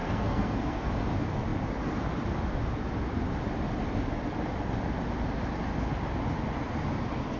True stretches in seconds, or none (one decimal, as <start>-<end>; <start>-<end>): 0.9-7.4